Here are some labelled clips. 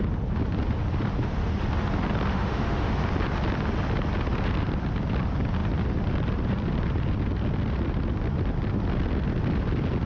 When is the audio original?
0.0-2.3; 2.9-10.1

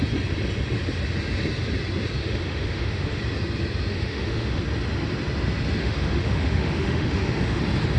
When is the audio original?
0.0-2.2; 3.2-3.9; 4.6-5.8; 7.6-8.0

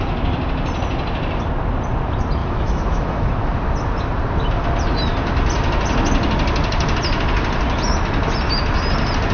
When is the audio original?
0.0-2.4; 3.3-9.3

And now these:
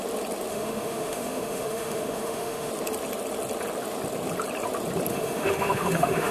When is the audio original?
0.0-0.5; 2.7-5.1

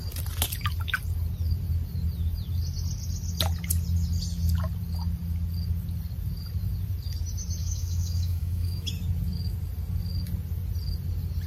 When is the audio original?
0.0-7.6; 8.9-11.5

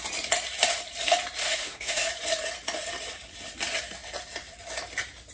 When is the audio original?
0.0-1.4; 2.1-5.3

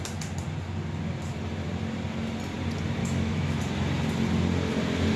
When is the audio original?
0.0-3.0; 3.6-5.2